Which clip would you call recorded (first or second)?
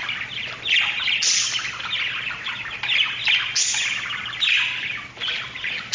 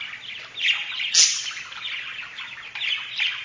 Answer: second